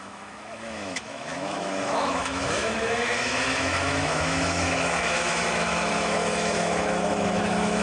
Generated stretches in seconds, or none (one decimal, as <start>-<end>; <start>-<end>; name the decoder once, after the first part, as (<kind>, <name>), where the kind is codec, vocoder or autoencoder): 0.0-7.8 (autoencoder, DAC-VAE)